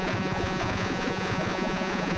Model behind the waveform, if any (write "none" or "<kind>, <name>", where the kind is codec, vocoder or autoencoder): vocoder, Vocos